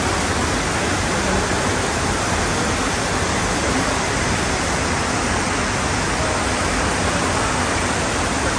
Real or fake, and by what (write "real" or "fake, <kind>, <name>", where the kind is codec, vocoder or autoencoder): real